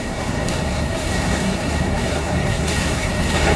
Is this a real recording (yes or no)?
no